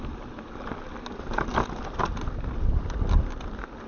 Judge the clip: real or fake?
real